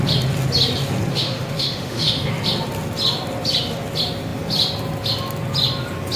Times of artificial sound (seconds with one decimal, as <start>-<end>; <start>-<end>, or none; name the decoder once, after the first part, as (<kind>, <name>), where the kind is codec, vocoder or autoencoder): 1.1-2.3 (autoencoder, DAC-VAE)